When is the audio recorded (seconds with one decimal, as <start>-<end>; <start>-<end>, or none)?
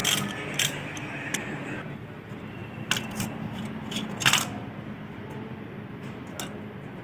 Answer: 0.0-7.0